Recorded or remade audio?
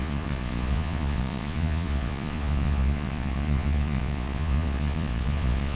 remade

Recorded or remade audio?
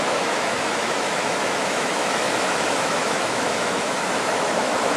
remade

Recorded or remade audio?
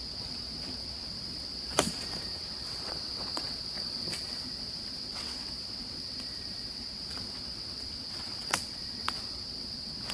remade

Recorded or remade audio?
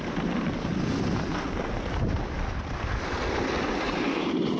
recorded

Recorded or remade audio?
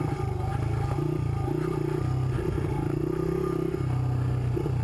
recorded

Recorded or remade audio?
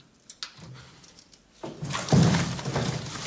recorded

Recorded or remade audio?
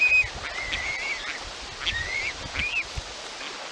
recorded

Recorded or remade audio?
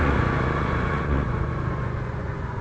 remade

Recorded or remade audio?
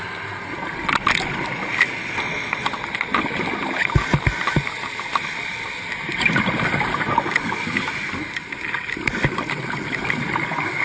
recorded